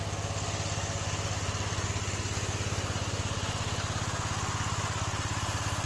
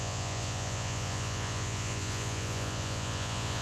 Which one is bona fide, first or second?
first